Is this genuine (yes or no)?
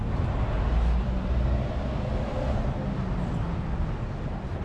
yes